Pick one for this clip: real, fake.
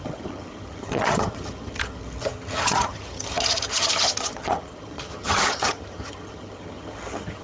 fake